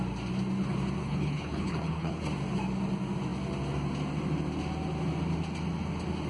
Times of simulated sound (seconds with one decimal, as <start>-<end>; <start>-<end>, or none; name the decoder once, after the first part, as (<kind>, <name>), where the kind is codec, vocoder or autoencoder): 1.0-2.2 (codec, HILCodec)